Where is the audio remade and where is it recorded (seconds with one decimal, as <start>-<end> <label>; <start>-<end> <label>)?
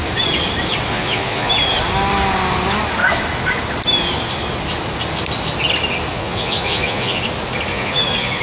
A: 0.0-0.9 recorded; 0.9-1.5 remade; 1.5-6.1 recorded; 6.1-7.2 remade; 7.2-7.7 recorded; 7.7-8.4 remade